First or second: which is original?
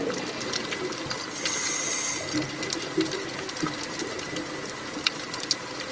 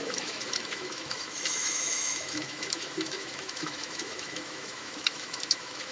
first